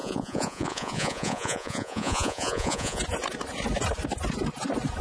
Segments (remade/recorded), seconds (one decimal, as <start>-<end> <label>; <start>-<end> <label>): 0.0-3.0 remade; 3.0-5.0 recorded